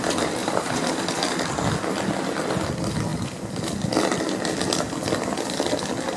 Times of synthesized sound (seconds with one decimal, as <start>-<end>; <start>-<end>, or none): 0.4-0.9